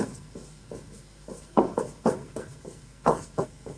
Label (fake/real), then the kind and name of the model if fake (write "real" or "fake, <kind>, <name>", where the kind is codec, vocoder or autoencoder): fake, codec, SNAC